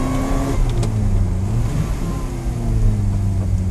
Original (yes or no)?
yes